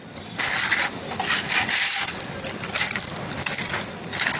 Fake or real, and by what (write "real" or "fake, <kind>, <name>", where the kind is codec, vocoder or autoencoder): real